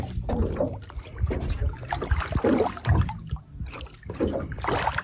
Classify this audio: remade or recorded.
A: recorded